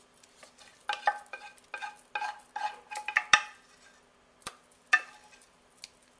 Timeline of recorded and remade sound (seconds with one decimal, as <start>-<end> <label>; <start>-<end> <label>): 0.0-6.2 recorded